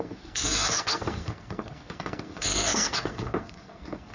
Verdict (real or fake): fake